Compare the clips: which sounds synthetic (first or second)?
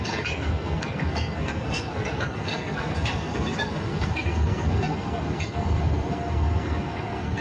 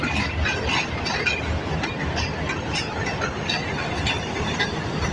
first